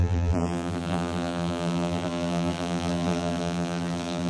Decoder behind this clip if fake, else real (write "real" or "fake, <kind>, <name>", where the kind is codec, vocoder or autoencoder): fake, vocoder, BigVGAN v2